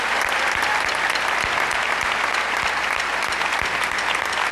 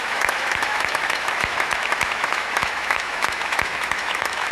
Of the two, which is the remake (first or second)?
second